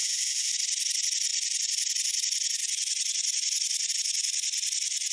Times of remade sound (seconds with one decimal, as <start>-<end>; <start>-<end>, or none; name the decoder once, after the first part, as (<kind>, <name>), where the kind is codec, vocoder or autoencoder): 0.0-0.5 (vocoder, WaveNeXt)